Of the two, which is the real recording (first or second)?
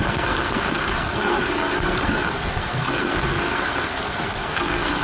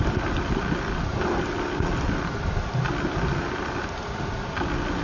second